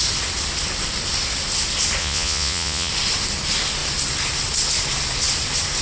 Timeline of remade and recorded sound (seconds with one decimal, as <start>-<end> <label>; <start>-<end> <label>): 0.0-2.0 recorded; 2.0-2.9 remade; 2.9-5.8 recorded